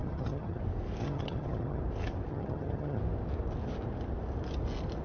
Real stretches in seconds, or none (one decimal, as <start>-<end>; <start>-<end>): 0.6-1.0; 1.8-2.3; 3.0-5.0